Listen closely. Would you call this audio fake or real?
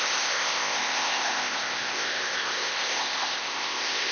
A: fake